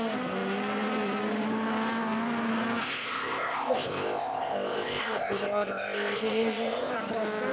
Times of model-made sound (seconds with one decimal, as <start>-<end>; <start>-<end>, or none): 2.8-6.9